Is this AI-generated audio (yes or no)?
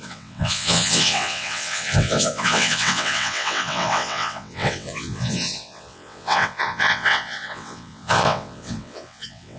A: yes